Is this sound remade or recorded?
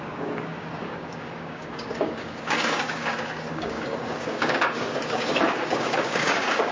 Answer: remade